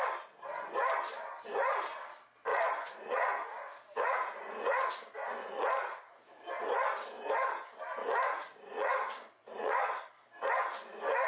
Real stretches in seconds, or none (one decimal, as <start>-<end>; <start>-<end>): 0.0-2.5; 4.9-5.4; 6.4-8.0; 10.1-11.3